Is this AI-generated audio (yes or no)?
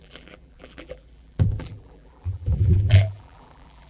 yes